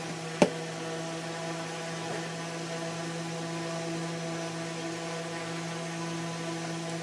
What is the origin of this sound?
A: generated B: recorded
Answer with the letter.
B